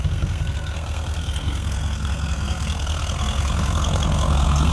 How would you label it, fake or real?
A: fake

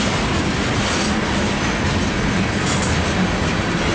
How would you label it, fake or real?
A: real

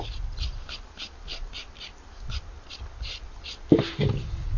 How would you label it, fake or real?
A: real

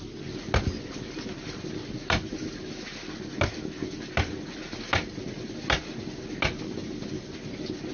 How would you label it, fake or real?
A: real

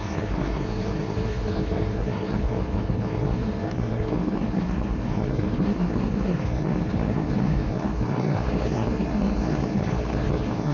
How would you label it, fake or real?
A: fake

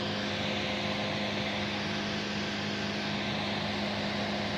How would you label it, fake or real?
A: real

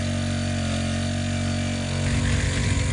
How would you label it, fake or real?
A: real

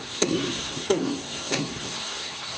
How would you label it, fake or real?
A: fake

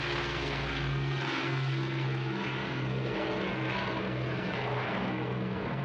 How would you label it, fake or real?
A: fake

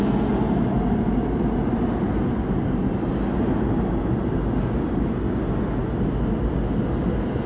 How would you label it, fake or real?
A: real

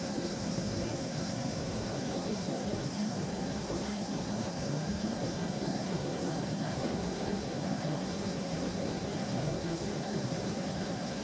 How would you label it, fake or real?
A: fake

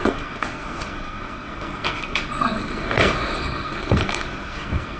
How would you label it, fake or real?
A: fake